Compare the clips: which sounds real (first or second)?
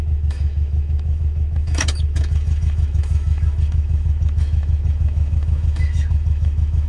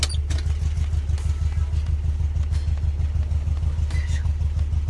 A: second